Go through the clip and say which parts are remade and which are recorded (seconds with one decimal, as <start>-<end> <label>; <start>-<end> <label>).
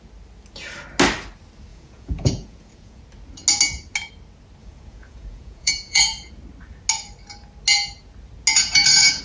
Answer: 0.0-1.7 recorded; 1.7-3.0 remade; 3.0-4.6 recorded; 4.6-6.0 remade; 6.0-8.6 recorded; 8.6-9.2 remade